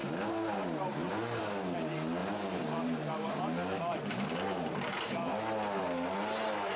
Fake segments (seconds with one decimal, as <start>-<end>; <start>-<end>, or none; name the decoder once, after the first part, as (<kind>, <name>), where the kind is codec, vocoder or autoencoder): 0.0-1.4 (vocoder, BigVGAN v2); 2.2-3.4